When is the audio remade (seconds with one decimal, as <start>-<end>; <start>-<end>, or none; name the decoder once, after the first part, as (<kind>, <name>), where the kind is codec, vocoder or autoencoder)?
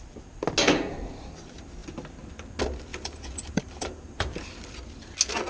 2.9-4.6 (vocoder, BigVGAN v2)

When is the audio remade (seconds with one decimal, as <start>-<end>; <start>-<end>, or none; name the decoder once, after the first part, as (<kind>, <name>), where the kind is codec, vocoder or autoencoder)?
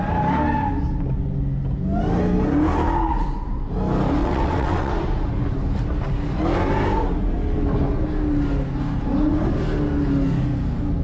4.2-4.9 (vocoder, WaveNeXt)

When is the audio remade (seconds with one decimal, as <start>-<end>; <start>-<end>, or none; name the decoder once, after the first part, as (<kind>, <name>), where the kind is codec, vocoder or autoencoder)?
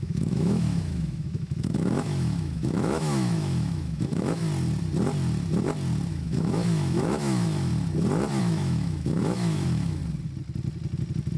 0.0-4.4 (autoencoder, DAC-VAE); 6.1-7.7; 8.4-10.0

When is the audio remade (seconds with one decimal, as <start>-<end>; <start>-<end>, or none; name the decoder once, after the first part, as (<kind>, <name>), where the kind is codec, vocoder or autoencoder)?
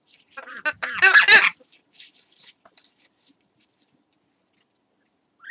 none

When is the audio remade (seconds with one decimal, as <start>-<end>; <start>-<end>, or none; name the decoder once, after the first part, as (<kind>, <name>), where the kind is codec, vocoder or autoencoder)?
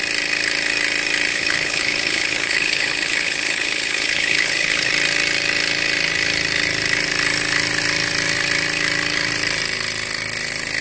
1.3-4.9 (codec, HILCodec)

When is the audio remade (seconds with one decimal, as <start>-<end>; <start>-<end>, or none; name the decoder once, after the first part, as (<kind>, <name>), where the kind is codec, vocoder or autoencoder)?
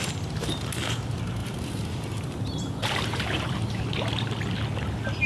1.4-3.8 (vocoder, BigVGAN v2)